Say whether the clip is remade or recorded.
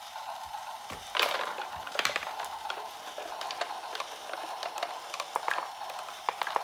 remade